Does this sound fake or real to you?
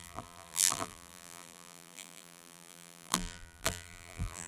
fake